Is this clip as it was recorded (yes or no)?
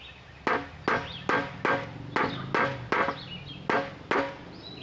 yes